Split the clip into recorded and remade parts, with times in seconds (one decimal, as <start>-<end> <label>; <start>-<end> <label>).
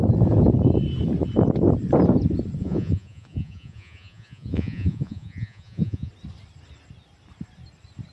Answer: 0.0-2.6 recorded; 2.6-6.1 remade; 6.1-8.1 recorded